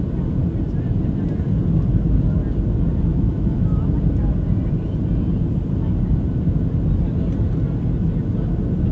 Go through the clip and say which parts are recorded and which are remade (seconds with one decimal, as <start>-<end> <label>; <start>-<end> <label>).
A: 0.0-3.1 recorded; 3.1-3.8 remade; 3.8-8.9 recorded